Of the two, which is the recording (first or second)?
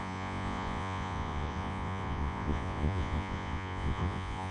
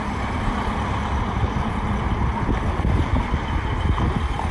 second